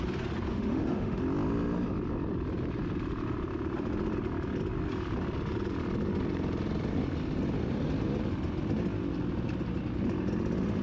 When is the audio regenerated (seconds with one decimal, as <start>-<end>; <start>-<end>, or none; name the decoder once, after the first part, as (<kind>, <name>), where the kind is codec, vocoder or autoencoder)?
0.5-1.2 (autoencoder, DAC-VAE)